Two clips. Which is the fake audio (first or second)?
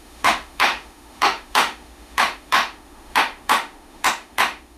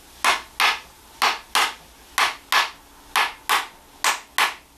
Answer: first